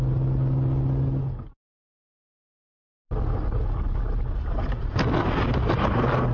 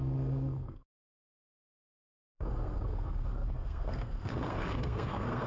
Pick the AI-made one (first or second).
second